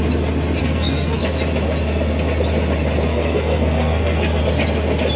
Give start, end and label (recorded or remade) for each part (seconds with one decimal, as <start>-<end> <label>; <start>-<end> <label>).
0.0-0.6 recorded; 0.6-1.2 remade; 1.2-3.1 recorded; 3.1-4.4 remade; 4.4-5.2 recorded